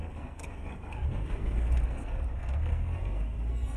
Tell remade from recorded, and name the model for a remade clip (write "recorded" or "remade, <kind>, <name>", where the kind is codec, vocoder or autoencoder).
remade, codec, SNAC